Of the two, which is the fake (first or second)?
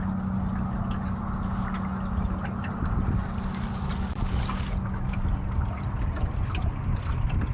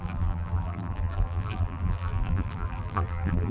second